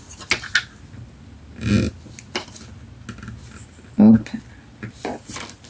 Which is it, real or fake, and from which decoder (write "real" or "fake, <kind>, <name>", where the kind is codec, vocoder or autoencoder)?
real